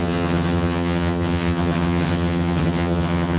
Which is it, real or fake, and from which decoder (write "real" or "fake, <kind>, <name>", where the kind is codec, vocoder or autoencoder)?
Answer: fake, vocoder, HiFi-GAN